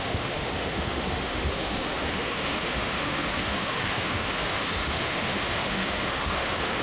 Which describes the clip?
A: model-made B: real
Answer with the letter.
A